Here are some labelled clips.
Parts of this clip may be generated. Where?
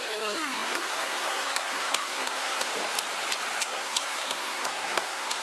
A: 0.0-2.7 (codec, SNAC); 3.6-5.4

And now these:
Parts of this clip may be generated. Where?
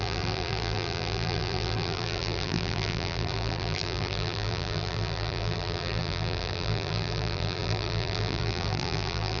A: 0.0-9.4 (vocoder, BigVGAN v2)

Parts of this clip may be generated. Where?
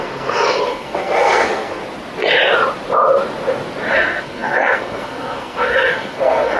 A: 0.0-1.8 (codec, SNAC); 3.9-6.6